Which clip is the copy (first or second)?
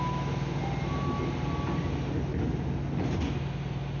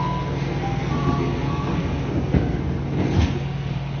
second